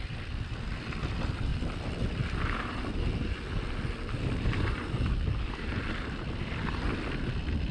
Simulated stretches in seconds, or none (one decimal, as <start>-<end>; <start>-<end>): 1.5-6.1